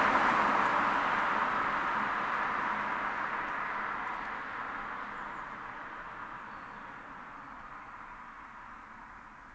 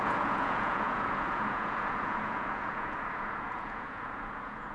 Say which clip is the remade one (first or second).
second